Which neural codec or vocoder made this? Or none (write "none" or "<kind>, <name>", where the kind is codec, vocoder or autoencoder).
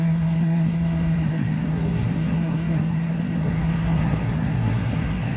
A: codec, SNAC